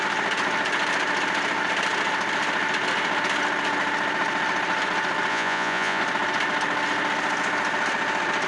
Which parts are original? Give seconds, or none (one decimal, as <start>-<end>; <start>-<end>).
0.0-5.3; 6.0-8.5